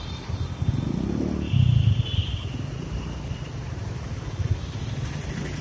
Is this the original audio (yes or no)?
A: yes